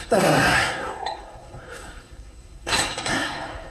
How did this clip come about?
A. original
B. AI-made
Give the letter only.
B